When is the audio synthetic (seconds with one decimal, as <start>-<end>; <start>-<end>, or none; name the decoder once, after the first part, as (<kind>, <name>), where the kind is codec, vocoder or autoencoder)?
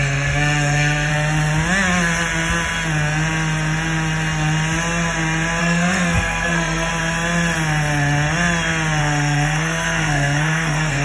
0.0-1.1 (codec, SNAC); 5.6-6.9; 9.0-11.0